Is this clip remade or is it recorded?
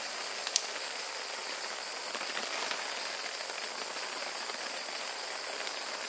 recorded